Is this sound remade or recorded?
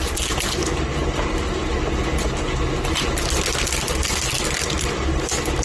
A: recorded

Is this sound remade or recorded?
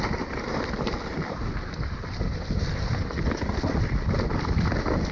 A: recorded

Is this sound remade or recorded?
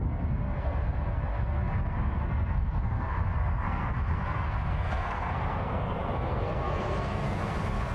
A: remade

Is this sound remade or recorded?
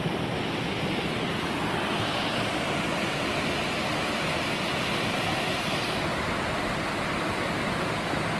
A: recorded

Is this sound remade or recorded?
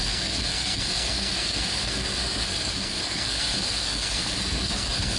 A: remade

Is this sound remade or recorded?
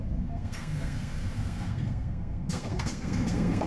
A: remade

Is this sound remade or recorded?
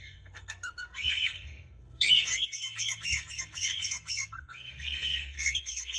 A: remade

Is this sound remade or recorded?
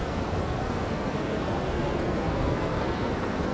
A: remade